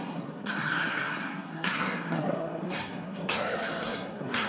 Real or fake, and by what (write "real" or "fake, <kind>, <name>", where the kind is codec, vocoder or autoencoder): fake, codec, SNAC